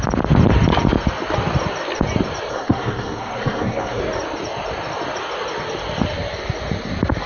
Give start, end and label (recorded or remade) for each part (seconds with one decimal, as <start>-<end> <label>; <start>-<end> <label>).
0.0-2.5 recorded; 2.5-4.0 remade; 4.0-7.3 recorded